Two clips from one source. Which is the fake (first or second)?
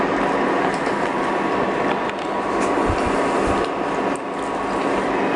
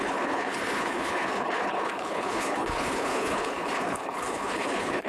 second